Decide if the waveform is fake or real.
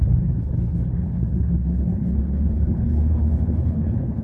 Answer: fake